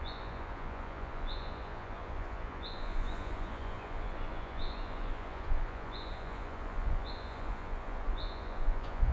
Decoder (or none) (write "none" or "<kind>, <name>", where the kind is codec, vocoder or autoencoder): vocoder, Vocos